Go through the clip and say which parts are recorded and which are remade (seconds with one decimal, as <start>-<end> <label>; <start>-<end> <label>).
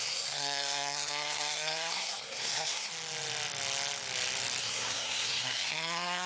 0.0-2.9 remade; 2.9-4.6 recorded; 4.6-6.3 remade